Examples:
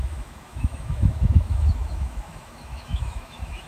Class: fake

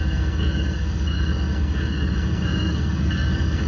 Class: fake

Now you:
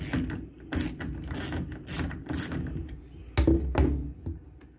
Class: real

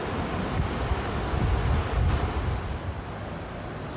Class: real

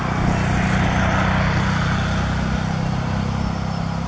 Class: real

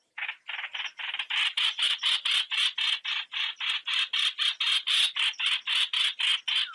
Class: real